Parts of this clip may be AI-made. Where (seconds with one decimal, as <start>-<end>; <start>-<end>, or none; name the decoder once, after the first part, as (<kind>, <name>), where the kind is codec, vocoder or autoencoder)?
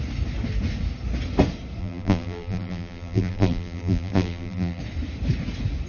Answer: 1.8-4.8 (vocoder, BigVGAN v2)